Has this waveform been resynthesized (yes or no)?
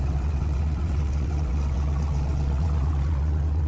yes